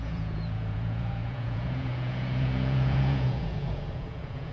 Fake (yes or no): yes